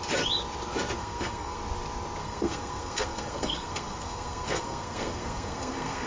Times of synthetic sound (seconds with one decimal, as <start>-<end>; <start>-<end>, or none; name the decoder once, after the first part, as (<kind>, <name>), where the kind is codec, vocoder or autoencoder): 1.0-1.6 (codec, SNAC); 2.2-6.1